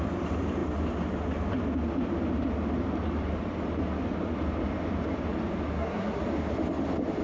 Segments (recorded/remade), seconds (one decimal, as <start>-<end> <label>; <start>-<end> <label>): 0.0-5.7 recorded; 5.7-6.2 remade; 6.2-7.2 recorded